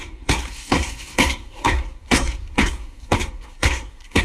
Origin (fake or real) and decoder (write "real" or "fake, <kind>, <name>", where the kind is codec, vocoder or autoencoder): fake, codec, SNAC